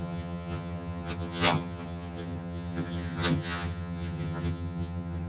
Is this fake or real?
fake